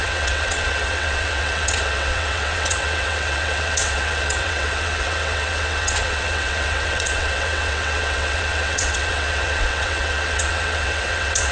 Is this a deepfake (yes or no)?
yes